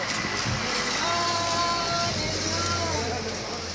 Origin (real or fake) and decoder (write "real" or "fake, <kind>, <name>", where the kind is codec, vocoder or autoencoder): real